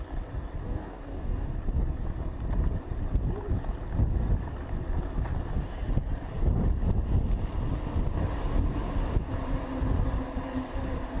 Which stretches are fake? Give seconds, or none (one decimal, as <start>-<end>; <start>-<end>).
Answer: 0.6-1.5